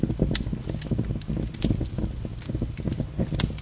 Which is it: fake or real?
real